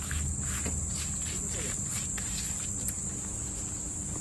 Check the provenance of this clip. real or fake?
real